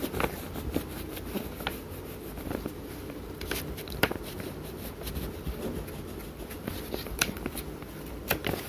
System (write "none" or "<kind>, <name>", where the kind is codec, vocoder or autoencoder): vocoder, BigVGAN v2